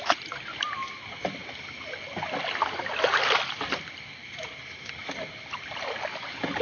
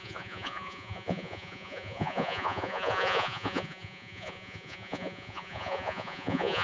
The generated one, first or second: second